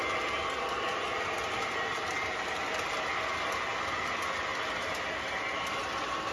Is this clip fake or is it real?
real